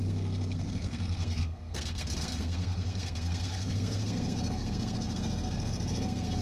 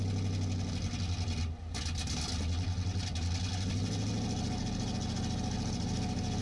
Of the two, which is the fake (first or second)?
first